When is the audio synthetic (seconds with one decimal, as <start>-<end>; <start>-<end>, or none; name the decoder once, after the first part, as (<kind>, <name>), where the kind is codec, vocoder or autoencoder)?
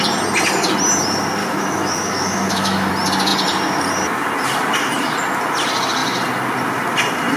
1.4-2.9 (autoencoder, DAC-VAE)